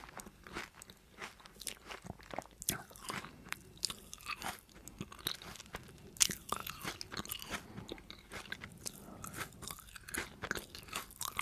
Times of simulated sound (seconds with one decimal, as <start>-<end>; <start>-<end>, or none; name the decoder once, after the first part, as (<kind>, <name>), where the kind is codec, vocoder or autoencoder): none